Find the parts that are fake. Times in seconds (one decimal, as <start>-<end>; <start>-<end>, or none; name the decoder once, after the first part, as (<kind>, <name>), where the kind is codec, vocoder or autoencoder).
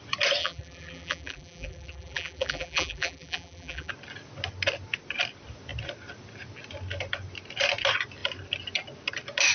0.4-3.9 (vocoder, BigVGAN v2)